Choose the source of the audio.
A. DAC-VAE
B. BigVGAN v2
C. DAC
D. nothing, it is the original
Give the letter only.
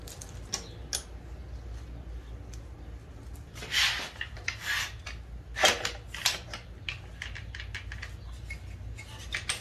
D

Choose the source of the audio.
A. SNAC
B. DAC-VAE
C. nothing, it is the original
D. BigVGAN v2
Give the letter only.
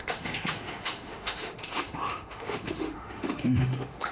B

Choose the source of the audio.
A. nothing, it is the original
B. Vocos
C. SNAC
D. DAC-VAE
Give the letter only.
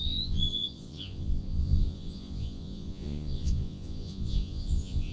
B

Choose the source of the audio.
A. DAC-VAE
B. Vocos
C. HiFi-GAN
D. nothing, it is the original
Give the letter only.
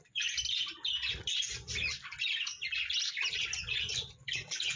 D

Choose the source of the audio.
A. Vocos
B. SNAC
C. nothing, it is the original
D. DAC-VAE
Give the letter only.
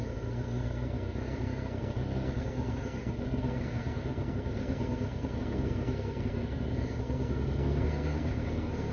B